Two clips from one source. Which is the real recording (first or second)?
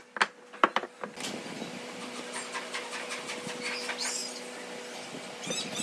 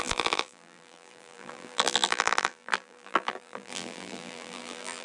first